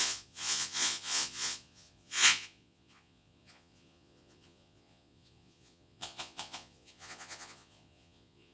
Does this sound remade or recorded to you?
remade